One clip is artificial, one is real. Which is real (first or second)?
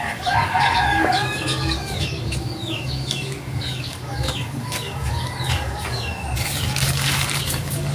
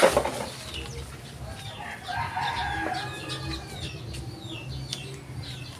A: second